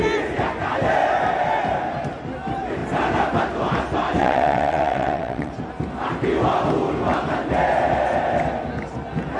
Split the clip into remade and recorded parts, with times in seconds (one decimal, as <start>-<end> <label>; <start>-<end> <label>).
0.0-4.2 recorded; 4.2-5.5 remade; 5.5-9.4 recorded